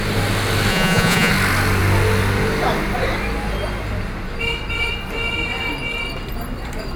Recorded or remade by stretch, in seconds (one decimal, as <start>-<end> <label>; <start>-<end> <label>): 0.0-0.7 recorded; 0.7-1.3 remade; 1.3-7.0 recorded